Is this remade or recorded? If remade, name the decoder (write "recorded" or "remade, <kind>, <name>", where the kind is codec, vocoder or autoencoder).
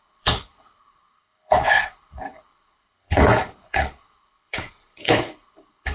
remade, codec, HILCodec